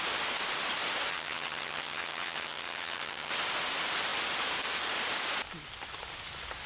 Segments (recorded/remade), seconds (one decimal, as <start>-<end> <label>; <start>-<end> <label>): 0.0-1.1 recorded; 1.1-3.3 remade; 3.3-6.7 recorded